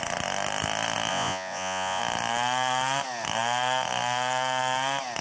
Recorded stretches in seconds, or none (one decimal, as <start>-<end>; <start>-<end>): 0.0-1.1; 2.0-5.2